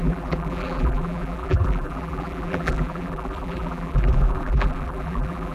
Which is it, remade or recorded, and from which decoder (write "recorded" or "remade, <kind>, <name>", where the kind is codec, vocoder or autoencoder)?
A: remade, vocoder, BigVGAN v2